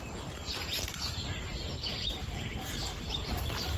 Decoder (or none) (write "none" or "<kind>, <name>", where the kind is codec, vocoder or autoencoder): vocoder, BigVGAN v2